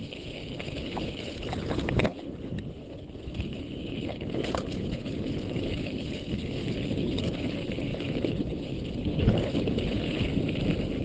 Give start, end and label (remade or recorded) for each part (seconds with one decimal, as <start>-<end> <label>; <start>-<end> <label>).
0.0-10.3 remade; 10.3-11.0 recorded